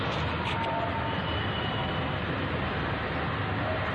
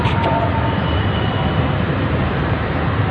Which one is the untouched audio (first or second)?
first